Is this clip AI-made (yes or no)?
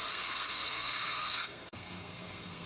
yes